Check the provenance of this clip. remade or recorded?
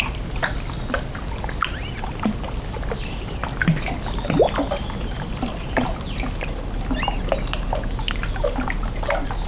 recorded